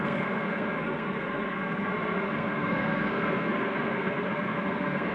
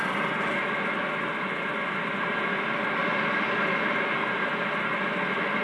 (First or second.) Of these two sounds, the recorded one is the second